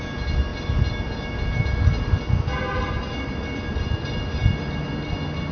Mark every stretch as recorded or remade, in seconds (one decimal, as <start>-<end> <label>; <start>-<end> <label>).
0.0-5.5 recorded